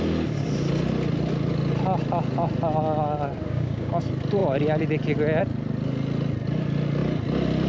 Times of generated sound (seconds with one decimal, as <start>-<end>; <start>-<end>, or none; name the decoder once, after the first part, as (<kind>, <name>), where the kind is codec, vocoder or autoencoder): 3.4-3.9 (codec, DAC)